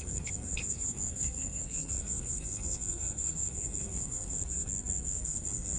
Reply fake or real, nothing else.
fake